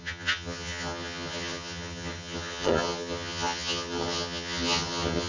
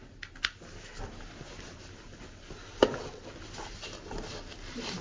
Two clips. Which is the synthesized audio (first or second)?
first